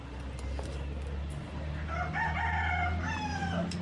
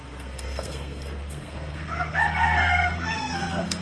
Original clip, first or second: first